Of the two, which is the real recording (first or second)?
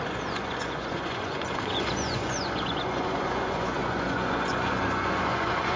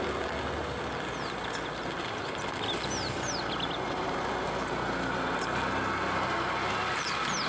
second